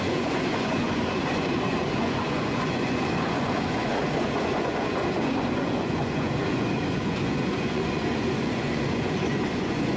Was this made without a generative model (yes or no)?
no